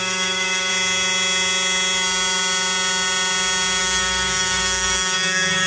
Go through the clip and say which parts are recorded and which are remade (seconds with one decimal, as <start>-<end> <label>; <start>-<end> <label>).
0.0-0.7 remade; 0.7-3.8 recorded; 3.8-5.7 remade